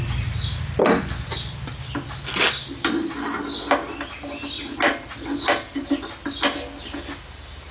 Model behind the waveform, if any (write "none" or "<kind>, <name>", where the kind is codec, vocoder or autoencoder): none